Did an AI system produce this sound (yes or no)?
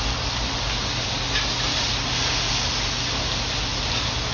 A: no